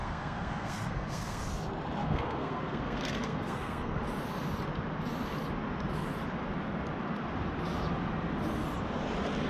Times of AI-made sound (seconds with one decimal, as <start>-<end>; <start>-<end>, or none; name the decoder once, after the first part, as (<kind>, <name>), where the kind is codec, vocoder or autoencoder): 0.0-1.4 (codec, SNAC); 2.0-4.0

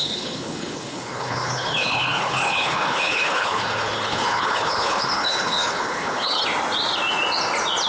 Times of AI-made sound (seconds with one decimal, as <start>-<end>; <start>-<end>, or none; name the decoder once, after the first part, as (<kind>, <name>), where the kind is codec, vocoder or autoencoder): 0.0-6.4 (codec, HILCodec)

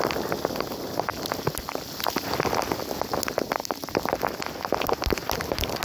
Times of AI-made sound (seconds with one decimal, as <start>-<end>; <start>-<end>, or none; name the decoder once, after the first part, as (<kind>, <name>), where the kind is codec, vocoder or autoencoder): none